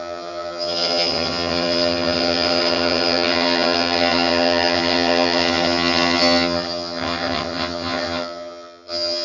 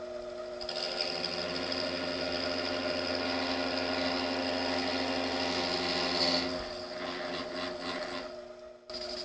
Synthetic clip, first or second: first